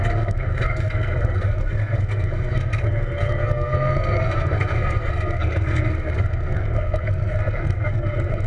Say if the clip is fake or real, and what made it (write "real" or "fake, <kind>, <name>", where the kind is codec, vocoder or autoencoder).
fake, codec, SNAC